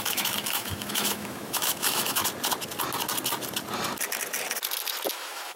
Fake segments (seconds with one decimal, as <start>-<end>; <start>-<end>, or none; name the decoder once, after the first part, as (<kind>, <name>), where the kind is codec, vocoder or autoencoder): 0.0-2.2 (autoencoder, DAC-VAE); 5.1-5.6